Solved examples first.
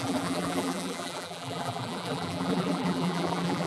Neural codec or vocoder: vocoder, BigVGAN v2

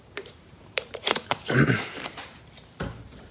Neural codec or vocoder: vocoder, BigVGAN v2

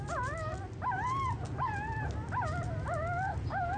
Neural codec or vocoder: none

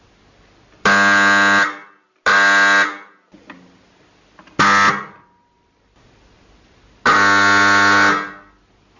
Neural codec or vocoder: none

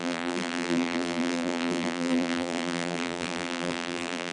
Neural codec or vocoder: vocoder, BigVGAN v2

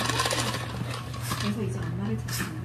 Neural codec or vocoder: none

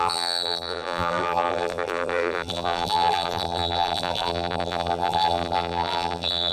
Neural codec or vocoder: vocoder, BigVGAN v2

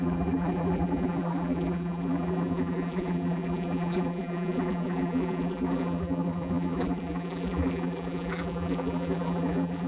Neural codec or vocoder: vocoder, BigVGAN v2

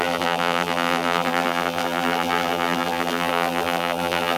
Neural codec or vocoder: vocoder, BigVGAN v2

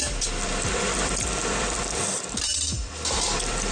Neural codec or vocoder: vocoder, BigVGAN v2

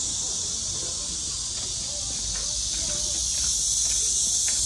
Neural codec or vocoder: none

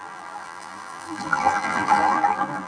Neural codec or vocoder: vocoder, BigVGAN v2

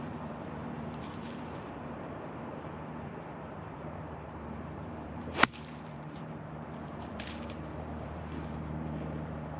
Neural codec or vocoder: vocoder, BigVGAN v2